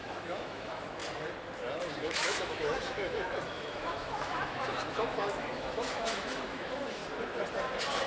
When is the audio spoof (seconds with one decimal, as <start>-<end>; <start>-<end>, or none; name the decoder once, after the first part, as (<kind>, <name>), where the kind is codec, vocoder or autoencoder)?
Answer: 0.0-1.0 (autoencoder, DAC-VAE); 2.0-7.0